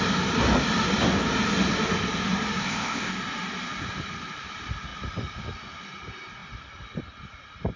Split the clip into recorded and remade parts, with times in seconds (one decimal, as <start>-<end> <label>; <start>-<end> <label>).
0.0-2.6 recorded; 2.6-3.1 remade; 3.1-7.8 recorded